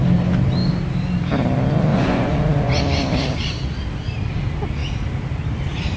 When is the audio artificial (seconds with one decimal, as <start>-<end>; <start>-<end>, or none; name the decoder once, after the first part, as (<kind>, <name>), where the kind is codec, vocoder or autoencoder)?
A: 1.9-2.8 (vocoder, Vocos)